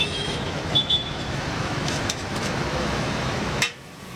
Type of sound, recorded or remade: remade